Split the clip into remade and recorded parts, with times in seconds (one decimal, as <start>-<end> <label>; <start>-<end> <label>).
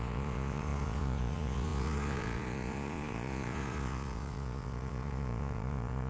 0.0-6.1 remade